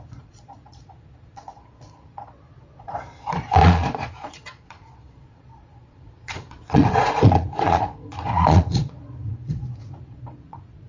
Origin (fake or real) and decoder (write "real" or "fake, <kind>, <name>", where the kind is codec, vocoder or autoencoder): fake, vocoder, Vocos